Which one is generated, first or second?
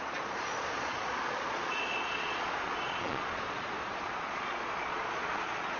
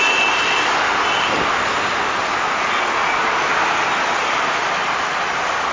first